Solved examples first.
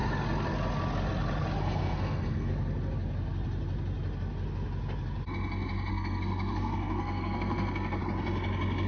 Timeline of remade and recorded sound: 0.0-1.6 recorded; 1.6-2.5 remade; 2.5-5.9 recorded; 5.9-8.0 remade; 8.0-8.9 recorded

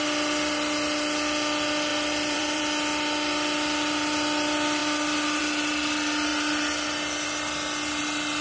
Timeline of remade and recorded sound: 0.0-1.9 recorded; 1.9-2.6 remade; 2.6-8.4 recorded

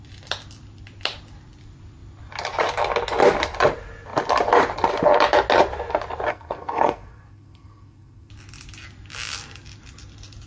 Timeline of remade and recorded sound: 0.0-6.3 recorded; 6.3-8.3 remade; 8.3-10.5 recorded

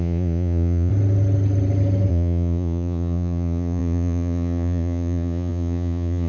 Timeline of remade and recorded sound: 0.0-0.9 remade; 0.9-2.1 recorded; 2.1-6.3 remade